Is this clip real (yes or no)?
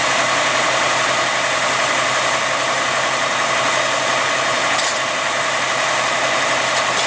yes